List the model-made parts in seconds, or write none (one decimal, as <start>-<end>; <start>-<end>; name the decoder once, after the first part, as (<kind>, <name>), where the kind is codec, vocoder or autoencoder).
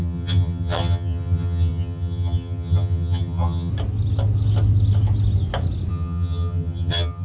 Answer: 0.0-3.7 (vocoder, HiFi-GAN); 5.9-7.2